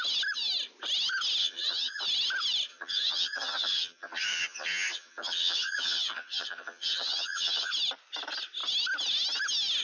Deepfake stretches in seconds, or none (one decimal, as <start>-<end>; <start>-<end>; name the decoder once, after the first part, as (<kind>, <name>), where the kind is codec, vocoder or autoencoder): 1.4-2.0 (vocoder, HiFi-GAN); 2.7-7.7